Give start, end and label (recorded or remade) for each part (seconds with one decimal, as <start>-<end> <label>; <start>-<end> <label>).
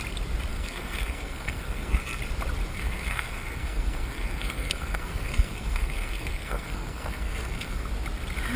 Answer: 0.0-0.5 recorded; 0.5-2.2 remade; 2.2-2.7 recorded; 2.7-7.9 remade; 7.9-8.6 recorded